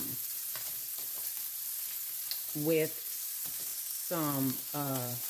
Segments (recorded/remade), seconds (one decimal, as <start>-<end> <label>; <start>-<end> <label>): 0.0-3.7 remade; 3.7-4.5 recorded; 4.5-5.3 remade

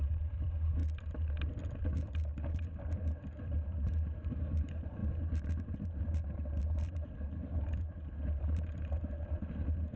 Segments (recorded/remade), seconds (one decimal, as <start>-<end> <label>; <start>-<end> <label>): 0.0-0.8 remade; 0.8-1.5 recorded; 1.5-10.0 remade